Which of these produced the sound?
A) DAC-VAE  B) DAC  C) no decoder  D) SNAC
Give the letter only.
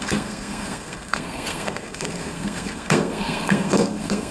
D